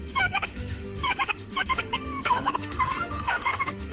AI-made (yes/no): yes